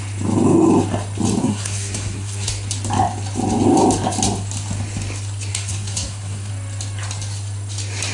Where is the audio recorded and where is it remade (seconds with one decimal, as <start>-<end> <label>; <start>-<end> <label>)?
0.0-1.4 recorded; 1.4-2.5 remade; 2.5-5.5 recorded; 5.5-6.5 remade; 6.5-8.1 recorded